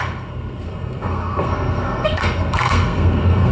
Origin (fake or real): fake